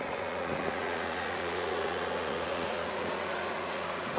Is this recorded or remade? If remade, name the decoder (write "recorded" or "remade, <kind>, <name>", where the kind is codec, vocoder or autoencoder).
remade, vocoder, Vocos